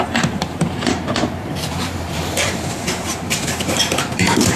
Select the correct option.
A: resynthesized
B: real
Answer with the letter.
A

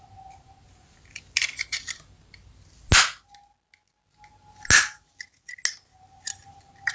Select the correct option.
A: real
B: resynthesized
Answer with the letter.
A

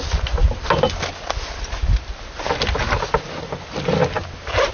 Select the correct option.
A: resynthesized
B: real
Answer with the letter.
B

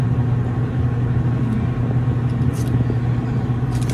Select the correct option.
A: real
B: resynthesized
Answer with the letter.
A